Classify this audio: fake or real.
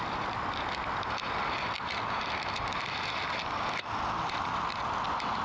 real